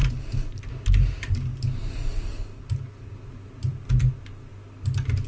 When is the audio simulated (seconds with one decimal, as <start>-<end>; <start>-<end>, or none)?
none